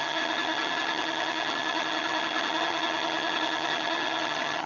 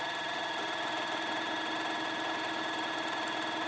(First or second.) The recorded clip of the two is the second